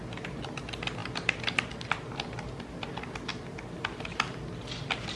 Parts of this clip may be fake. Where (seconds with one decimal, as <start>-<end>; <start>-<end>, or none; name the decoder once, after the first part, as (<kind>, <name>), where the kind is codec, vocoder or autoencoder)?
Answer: none